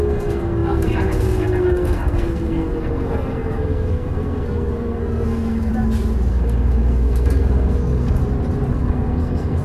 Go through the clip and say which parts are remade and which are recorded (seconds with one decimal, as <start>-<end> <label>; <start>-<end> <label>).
0.0-5.7 remade; 5.7-6.3 recorded; 6.3-8.2 remade; 8.2-8.7 recorded; 8.7-9.6 remade